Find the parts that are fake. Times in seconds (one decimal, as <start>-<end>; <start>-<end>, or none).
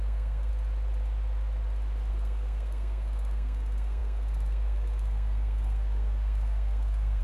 0.0-0.5; 2.1-7.2